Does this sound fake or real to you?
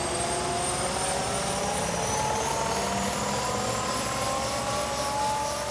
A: real